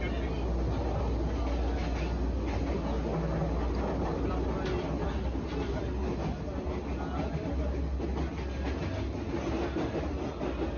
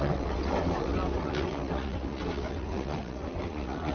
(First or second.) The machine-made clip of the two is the second